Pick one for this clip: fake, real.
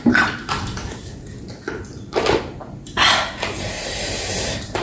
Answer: fake